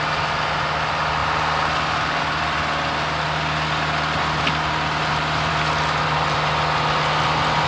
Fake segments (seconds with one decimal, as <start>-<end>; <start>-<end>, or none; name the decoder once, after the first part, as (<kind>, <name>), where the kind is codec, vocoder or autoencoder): none